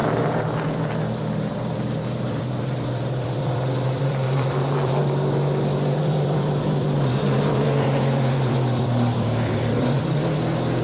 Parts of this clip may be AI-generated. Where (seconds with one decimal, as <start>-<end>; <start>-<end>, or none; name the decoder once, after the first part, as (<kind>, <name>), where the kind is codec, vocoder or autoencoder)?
0.0-5.0 (vocoder, BigVGAN v2); 6.0-10.8

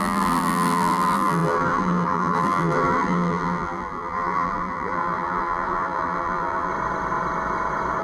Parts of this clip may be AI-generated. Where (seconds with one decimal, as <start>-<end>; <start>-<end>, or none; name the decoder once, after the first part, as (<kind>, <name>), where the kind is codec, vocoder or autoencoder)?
0.0-6.7 (vocoder, BigVGAN v2)

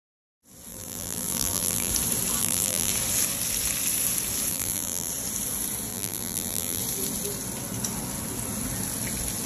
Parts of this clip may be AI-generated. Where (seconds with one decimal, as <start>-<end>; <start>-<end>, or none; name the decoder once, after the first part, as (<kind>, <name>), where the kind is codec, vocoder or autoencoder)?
0.7-1.9 (vocoder, BigVGAN v2); 2.4-2.9; 4.5-5.1; 5.9-6.8

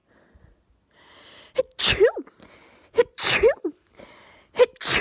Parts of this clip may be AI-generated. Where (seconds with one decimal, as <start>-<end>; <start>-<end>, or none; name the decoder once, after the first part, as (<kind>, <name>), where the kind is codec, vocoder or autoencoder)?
2.6-4.0 (vocoder, BigVGAN v2)

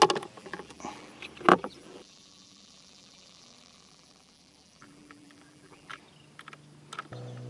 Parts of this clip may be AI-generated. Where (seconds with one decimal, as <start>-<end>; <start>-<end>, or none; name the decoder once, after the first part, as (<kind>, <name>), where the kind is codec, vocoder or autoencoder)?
0.4-1.1 (vocoder, BigVGAN v2); 1.5-6.0